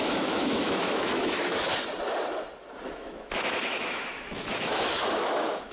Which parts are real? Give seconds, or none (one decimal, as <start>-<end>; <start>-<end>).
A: 1.7-2.9